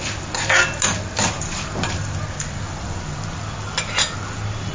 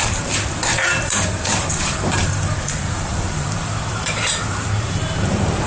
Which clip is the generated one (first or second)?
second